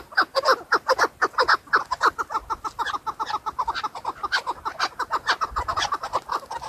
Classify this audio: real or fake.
real